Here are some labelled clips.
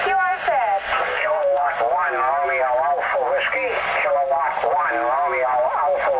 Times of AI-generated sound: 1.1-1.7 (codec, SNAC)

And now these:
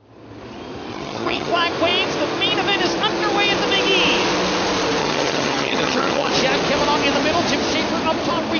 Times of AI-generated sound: 0.9-1.5 (vocoder, HiFi-GAN); 5.0-6.3

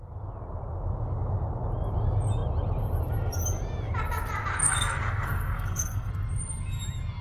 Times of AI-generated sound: 4.6-6.1 (codec, SNAC)

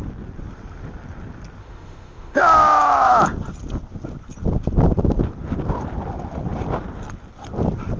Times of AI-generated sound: 1.6-2.4 (autoencoder, DAC-VAE)

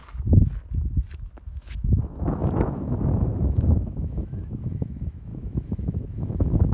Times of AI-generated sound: 1.5-6.7 (autoencoder, DAC-VAE)